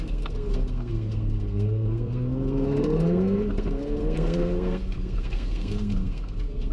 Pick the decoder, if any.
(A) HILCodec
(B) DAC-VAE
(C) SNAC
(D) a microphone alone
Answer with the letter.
C